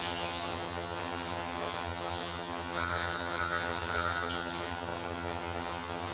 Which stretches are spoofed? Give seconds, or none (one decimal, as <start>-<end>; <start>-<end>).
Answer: 0.0-6.1